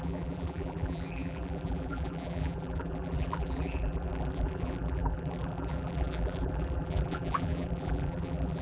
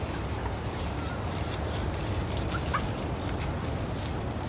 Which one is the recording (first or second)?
second